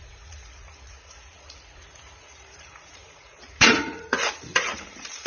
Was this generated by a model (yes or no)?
yes